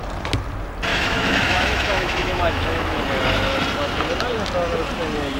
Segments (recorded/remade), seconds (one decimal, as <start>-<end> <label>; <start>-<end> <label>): 0.0-0.9 recorded; 0.9-3.0 remade; 3.0-5.4 recorded